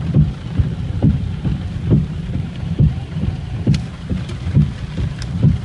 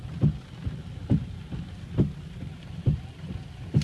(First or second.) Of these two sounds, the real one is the second